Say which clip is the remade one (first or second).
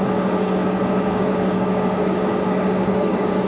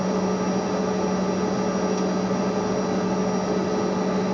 first